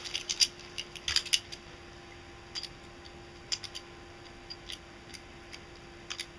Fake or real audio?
real